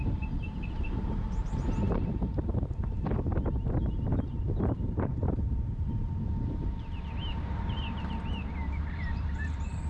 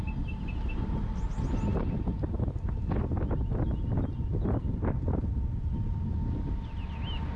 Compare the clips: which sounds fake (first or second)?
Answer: first